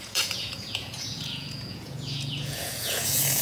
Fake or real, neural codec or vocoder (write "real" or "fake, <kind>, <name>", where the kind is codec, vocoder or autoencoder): fake, vocoder, Vocos